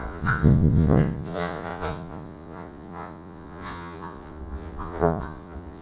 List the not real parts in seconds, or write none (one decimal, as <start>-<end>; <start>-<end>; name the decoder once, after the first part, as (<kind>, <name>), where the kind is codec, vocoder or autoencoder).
0.0-5.8 (vocoder, Vocos)